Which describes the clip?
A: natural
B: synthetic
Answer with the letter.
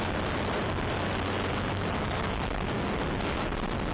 A